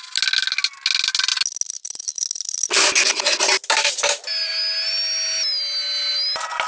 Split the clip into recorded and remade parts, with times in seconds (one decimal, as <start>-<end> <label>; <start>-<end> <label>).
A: 0.0-6.7 recorded